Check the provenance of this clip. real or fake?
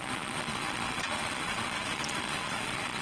fake